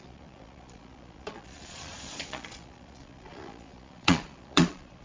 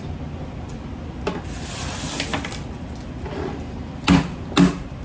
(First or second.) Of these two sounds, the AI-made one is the first